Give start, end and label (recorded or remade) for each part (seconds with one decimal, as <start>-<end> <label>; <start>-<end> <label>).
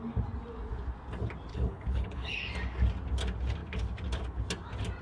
0.0-1.5 recorded; 1.5-2.4 remade; 2.4-5.0 recorded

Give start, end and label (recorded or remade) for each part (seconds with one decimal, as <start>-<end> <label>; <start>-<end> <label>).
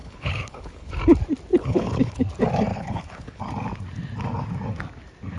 0.0-0.9 remade; 0.9-1.5 recorded; 1.5-2.2 remade; 2.2-2.7 recorded; 2.7-3.4 remade; 3.4-5.4 recorded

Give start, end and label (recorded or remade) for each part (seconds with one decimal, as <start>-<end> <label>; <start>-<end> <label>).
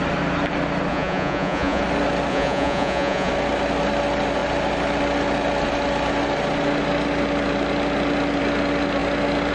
0.0-0.9 recorded; 0.9-1.8 remade; 1.8-2.3 recorded; 2.3-3.3 remade; 3.3-9.5 recorded